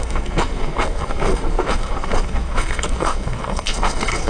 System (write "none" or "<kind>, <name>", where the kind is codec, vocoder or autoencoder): codec, SNAC